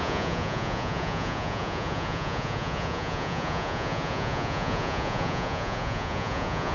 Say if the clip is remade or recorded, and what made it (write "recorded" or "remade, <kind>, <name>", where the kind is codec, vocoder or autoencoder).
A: remade, vocoder, Vocos